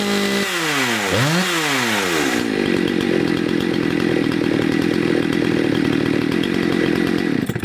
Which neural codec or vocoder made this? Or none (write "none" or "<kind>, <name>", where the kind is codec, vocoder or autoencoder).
none